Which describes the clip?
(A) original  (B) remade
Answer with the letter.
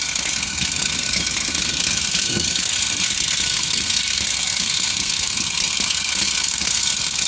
B